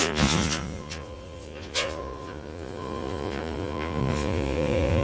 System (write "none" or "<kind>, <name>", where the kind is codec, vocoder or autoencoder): vocoder, Vocos